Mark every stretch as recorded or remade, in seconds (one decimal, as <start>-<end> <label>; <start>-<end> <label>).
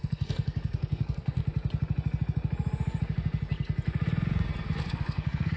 0.0-1.4 remade; 1.4-4.8 recorded; 4.8-5.6 remade